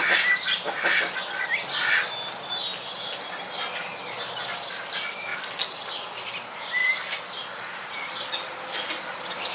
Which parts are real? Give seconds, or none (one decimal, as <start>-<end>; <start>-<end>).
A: 0.0-9.5